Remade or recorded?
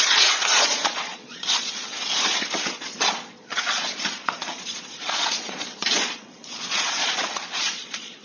remade